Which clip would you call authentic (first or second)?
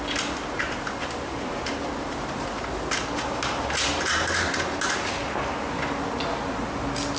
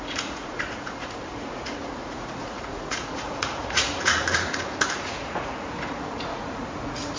first